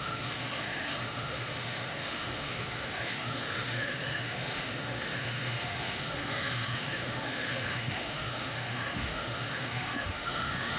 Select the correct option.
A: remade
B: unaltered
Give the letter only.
A